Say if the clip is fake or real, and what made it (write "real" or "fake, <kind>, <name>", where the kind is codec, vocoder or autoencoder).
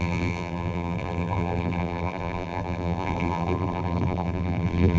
fake, vocoder, BigVGAN v2